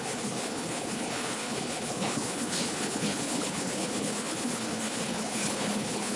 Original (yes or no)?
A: no